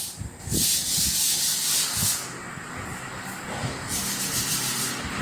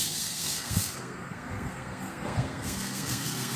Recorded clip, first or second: first